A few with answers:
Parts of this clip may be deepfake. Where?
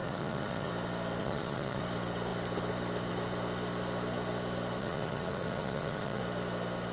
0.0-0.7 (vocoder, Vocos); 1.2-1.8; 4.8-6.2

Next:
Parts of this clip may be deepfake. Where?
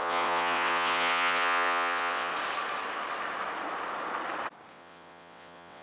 0.0-2.3 (vocoder, WaveNeXt); 4.7-5.8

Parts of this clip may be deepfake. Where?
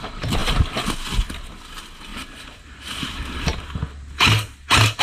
2.1-3.6 (vocoder, BigVGAN v2)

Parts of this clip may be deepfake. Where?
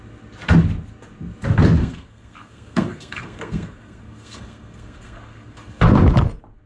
1.8-5.8 (codec, SNAC)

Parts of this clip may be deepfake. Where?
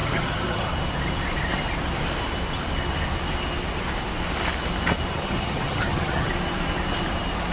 0.0-0.7 (vocoder, HiFi-GAN); 5.1-6.3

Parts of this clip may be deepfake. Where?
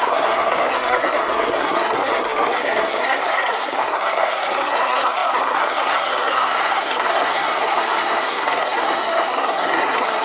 0.0-10.2 (codec, SNAC)